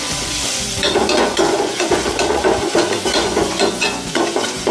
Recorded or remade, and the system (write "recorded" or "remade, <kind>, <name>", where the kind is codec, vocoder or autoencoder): remade, vocoder, Vocos